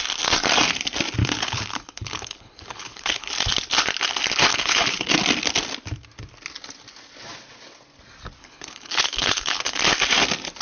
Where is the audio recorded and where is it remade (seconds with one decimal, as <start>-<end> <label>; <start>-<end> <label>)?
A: 0.0-1.2 recorded; 1.2-3.3 remade; 3.3-4.5 recorded; 4.5-5.1 remade; 5.1-8.4 recorded; 8.4-9.8 remade; 9.8-10.6 recorded